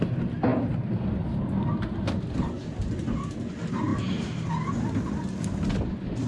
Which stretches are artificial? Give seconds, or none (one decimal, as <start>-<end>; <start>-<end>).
none